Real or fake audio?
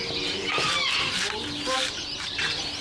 real